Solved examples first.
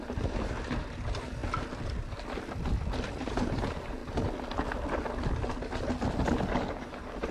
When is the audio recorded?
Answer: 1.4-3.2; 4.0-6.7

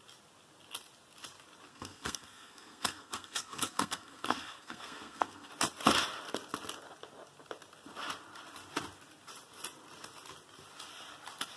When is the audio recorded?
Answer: 0.0-1.7; 5.5-11.6

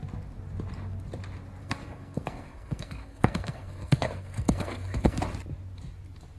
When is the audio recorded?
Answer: 0.0-1.6; 5.2-6.4